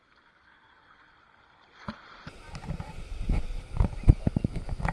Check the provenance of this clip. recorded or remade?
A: recorded